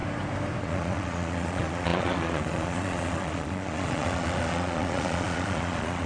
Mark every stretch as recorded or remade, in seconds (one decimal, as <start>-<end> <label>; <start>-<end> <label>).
0.0-0.6 recorded; 0.6-6.1 remade